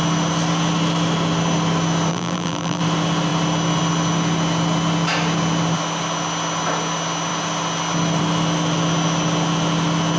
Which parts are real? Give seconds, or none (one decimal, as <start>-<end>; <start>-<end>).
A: 0.0-2.1; 2.8-10.2